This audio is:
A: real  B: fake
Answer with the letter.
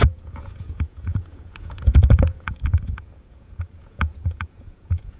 B